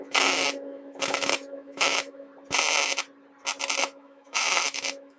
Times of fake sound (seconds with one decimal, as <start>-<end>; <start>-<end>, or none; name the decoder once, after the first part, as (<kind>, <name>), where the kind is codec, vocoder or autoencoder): 0.0-2.3 (autoencoder, DAC-VAE); 3.8-5.2